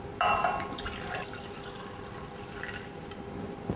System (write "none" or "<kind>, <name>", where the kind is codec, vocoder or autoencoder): none